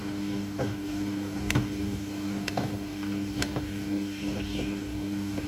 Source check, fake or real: fake